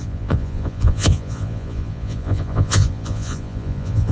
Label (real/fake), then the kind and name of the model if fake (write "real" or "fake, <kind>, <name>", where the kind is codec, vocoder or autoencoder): fake, vocoder, Vocos